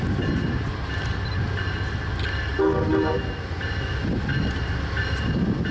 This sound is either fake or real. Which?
real